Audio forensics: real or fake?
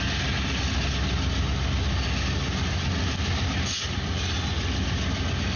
real